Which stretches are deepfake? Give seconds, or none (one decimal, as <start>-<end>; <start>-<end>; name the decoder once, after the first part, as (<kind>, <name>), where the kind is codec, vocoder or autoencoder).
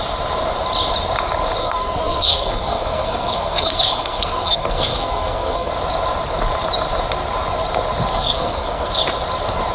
1.6-5.7 (codec, SNAC); 8.1-8.9